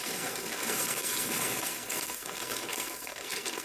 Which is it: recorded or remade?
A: remade